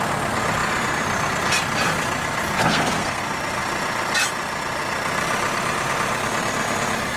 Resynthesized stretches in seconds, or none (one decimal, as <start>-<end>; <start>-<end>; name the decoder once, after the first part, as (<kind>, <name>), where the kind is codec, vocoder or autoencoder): 2.6-3.2 (codec, SNAC)